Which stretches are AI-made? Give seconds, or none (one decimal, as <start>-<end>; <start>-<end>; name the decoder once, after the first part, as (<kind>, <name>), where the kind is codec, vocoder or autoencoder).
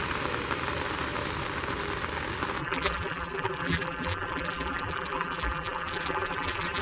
2.6-6.8 (vocoder, BigVGAN v2)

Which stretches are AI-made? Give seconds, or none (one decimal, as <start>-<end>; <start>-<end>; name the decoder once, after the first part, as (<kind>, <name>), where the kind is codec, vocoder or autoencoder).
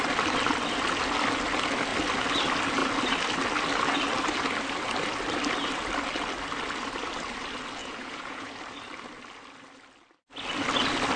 7.8-8.5 (vocoder, Vocos)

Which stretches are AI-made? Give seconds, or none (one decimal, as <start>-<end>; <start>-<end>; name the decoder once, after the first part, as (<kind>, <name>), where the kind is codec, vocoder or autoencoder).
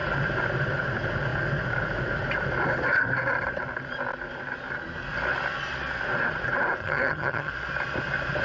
6.8-7.5 (vocoder, HiFi-GAN)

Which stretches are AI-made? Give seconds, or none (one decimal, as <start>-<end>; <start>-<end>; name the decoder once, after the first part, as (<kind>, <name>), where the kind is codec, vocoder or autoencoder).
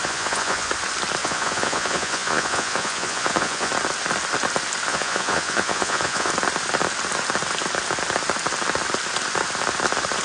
0.0-0.7 (vocoder, Vocos); 1.2-3.7; 4.9-6.3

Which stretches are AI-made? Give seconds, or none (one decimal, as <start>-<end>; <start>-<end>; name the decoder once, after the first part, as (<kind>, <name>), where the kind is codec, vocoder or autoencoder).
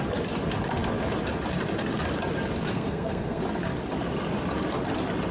2.7-3.4 (codec, SNAC)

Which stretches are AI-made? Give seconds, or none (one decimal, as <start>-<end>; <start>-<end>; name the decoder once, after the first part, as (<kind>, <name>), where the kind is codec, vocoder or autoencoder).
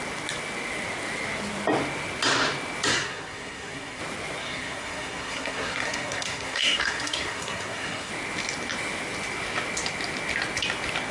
2.9-4.0 (codec, SNAC); 4.4-8.1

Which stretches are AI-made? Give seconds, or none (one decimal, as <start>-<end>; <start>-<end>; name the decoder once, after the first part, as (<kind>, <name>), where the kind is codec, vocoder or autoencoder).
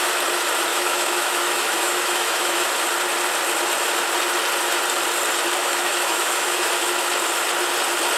0.7-2.7 (autoencoder, DAC-VAE); 5.6-6.9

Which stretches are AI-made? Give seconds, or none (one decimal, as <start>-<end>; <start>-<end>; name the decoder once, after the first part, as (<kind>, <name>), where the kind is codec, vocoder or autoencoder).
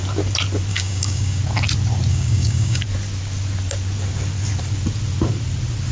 0.7-1.4 (codec, DAC); 2.1-2.8